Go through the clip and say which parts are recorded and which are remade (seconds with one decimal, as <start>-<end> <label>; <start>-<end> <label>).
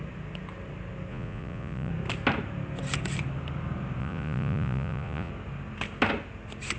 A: 0.0-1.1 recorded; 1.1-1.9 remade; 1.9-4.0 recorded; 4.0-5.3 remade; 5.3-6.8 recorded